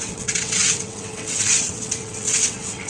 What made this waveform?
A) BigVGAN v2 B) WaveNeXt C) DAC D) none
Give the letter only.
B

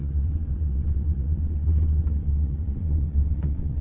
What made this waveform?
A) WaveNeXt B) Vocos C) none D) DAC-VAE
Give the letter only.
A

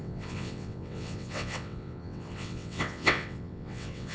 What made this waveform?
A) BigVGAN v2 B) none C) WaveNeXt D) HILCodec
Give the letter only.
C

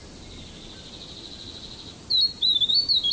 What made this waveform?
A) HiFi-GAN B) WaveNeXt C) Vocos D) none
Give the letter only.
D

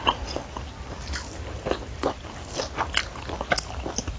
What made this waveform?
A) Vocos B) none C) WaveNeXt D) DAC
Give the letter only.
B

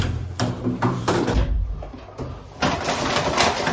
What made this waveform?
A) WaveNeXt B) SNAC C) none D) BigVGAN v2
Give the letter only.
C